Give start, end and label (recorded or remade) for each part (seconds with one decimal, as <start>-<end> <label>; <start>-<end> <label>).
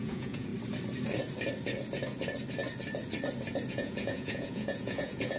0.0-0.5 remade; 0.5-3.7 recorded; 3.7-5.4 remade